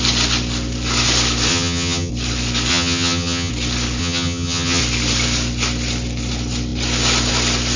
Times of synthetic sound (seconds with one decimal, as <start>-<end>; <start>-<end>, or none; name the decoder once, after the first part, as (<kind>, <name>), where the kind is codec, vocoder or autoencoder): 1.5-2.1 (vocoder, HiFi-GAN); 2.7-3.5; 4.0-4.8